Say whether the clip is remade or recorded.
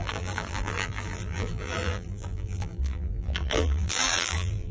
remade